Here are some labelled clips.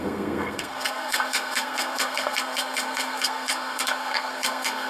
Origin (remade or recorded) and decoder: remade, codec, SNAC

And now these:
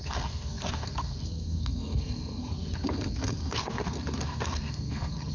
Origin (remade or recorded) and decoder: remade, codec, SNAC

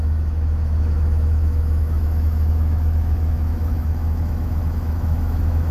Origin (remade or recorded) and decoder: remade, autoencoder, DAC-VAE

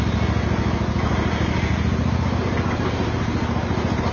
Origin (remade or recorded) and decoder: recorded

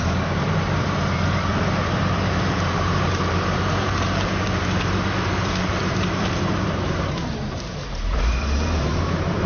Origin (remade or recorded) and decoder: remade, vocoder, BigVGAN v2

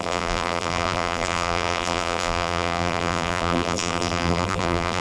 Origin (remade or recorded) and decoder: remade, vocoder, BigVGAN v2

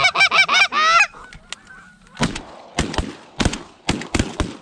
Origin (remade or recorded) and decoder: recorded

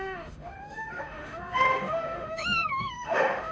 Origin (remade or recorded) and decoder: remade, autoencoder, DAC-VAE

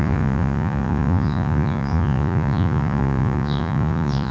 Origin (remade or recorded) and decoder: remade, vocoder, Vocos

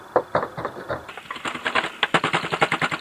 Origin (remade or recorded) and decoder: remade, vocoder, BigVGAN v2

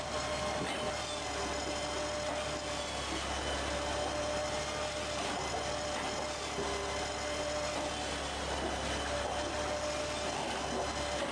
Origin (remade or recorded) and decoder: recorded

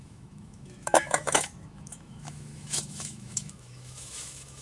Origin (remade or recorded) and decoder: remade, autoencoder, DAC-VAE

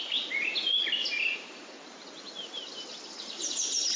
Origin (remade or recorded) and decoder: recorded